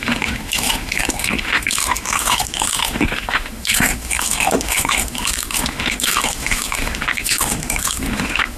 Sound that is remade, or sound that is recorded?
remade